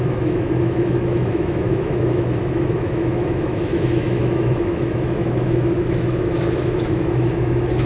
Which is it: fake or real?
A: fake